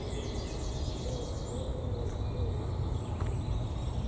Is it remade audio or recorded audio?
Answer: recorded